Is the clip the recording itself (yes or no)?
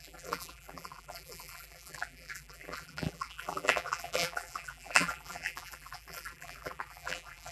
no